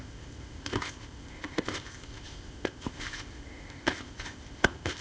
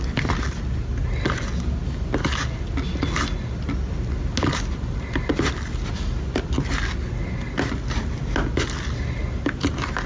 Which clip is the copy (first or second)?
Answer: first